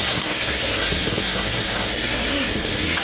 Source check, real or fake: fake